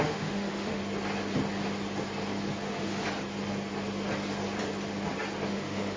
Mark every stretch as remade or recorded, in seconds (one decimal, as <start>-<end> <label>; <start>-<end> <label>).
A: 0.0-0.8 remade; 0.8-2.6 recorded; 2.6-3.0 remade; 3.0-5.5 recorded; 5.5-6.0 remade